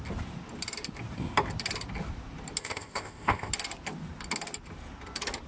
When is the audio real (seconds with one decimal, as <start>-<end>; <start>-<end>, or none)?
0.0-2.6; 3.5-5.5